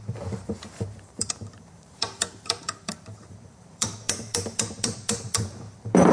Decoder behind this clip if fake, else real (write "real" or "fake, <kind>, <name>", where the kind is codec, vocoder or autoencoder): fake, vocoder, BigVGAN v2